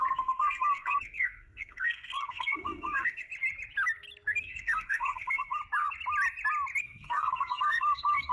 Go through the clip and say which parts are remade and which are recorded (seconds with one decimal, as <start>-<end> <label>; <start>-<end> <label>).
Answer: 0.0-3.3 remade; 3.3-4.4 recorded; 4.4-5.6 remade; 5.6-6.8 recorded; 6.8-8.3 remade